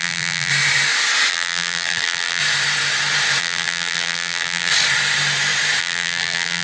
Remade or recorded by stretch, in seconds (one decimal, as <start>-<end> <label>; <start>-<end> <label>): 0.0-0.5 remade; 0.5-1.3 recorded; 1.3-2.4 remade; 2.4-3.4 recorded; 3.4-4.7 remade; 4.7-5.8 recorded; 5.8-6.6 remade